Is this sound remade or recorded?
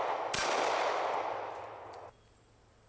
recorded